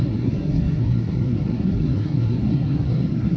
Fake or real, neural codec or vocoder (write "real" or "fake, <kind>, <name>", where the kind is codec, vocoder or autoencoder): fake, codec, SNAC